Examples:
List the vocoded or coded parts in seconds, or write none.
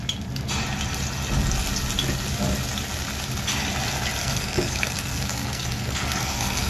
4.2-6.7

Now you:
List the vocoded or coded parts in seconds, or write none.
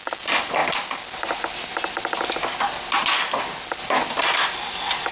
none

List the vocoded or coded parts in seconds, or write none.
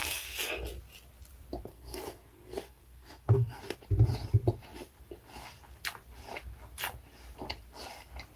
0.0-0.5; 1.7-3.6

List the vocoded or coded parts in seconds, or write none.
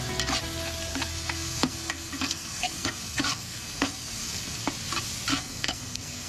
0.9-4.7; 5.3-6.3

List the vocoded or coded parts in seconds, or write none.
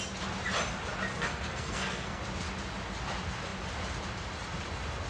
1.1-2.2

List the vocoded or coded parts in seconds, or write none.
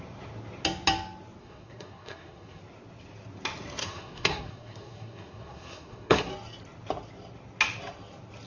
1.4-2.6; 3.8-6.3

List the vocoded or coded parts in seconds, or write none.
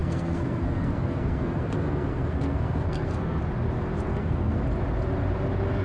0.0-3.4; 4.1-4.6